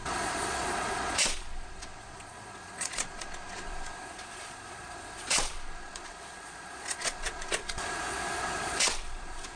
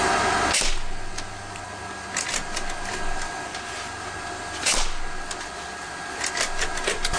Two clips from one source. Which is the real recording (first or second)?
second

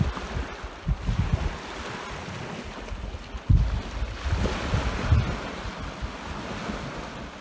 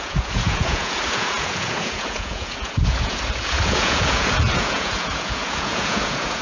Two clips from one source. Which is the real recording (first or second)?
first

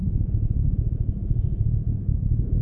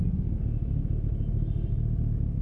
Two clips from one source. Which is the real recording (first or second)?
second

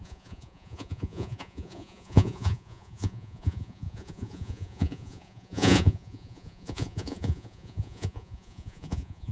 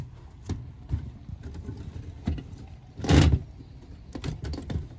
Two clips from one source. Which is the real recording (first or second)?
second